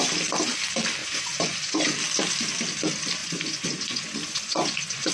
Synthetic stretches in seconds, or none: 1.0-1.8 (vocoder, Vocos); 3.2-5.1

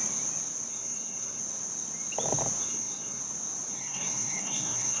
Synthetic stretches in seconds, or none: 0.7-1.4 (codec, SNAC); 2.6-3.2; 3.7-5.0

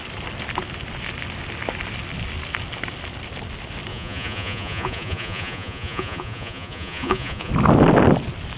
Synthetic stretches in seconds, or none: 3.9-7.5 (vocoder, Vocos)